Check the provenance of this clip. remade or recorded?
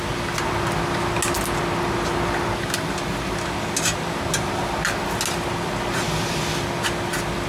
recorded